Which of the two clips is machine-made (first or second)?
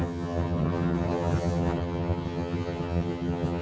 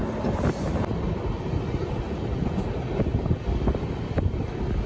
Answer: first